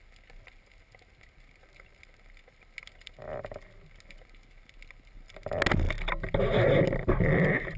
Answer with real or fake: real